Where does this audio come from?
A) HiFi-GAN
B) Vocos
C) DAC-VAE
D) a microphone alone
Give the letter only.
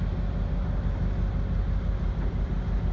D